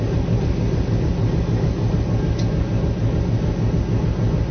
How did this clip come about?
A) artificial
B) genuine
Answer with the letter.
B